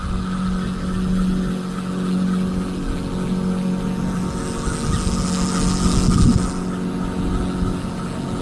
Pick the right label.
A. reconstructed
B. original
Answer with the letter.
B